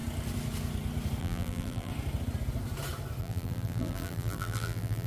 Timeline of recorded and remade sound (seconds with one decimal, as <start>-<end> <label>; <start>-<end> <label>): 0.0-1.2 recorded; 1.2-1.9 remade; 1.9-3.2 recorded; 3.2-5.1 remade